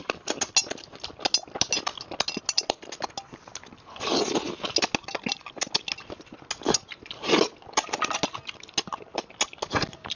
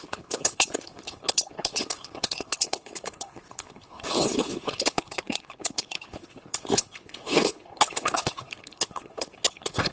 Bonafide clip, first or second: first